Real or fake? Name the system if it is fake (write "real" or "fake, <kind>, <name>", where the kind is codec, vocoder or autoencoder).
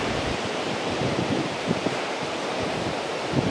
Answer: fake, vocoder, BigVGAN v2